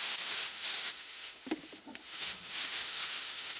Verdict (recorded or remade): remade